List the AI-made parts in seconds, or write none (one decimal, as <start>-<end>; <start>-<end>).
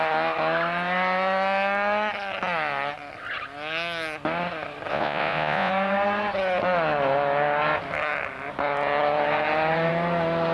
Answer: 4.9-5.7